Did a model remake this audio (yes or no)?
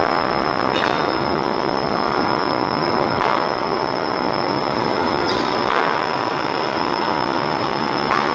yes